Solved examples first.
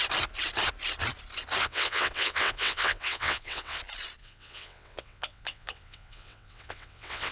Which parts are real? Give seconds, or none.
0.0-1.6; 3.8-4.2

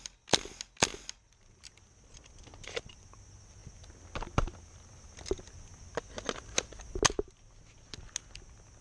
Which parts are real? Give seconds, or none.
0.0-8.8

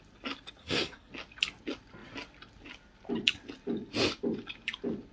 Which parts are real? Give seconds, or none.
0.0-0.6; 1.1-5.1

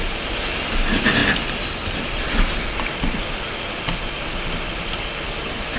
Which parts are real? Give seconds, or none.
0.0-5.8

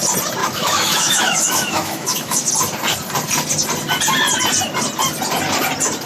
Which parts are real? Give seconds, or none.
0.0-0.4; 2.5-6.1

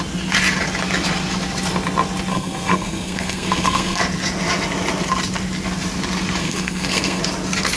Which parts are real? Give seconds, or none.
0.0-2.3; 4.0-6.4; 7.2-7.8

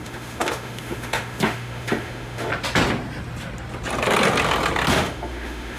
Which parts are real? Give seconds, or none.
2.5-4.9